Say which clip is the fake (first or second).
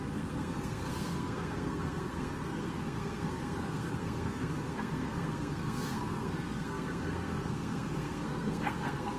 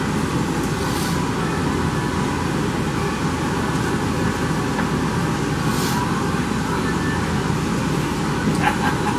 first